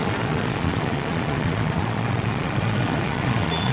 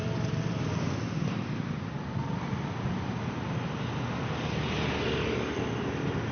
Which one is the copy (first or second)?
first